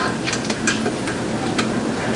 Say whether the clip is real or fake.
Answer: real